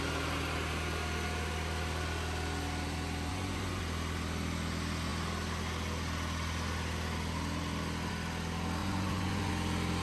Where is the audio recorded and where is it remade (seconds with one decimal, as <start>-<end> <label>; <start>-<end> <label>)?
0.0-3.3 recorded; 3.3-3.8 remade; 3.8-8.8 recorded; 8.8-9.5 remade; 9.5-10.0 recorded